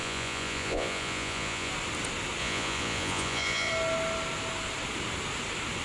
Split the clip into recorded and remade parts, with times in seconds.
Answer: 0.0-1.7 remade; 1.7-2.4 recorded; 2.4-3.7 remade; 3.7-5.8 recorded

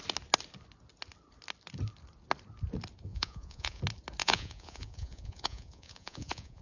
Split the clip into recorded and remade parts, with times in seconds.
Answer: 0.0-3.1 recorded; 3.1-3.8 remade; 3.8-4.2 recorded; 4.2-6.6 remade

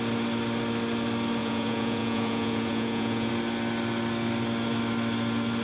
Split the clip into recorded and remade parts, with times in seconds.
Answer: 0.0-1.4 recorded; 1.4-3.3 remade; 3.3-5.6 recorded